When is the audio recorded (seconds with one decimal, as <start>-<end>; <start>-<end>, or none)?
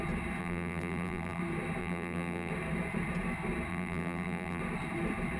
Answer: 0.0-0.4; 1.4-1.8; 2.5-3.7; 4.6-5.4